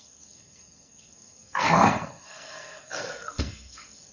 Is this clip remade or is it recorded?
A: remade